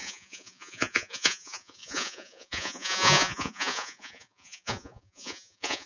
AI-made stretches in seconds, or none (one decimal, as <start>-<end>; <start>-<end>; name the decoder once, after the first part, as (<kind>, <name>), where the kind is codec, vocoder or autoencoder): 0.0-5.9 (vocoder, Vocos)